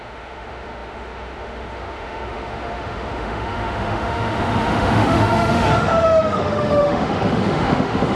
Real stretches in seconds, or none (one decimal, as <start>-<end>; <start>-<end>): none